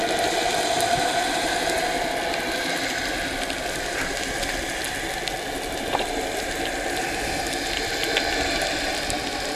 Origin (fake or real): real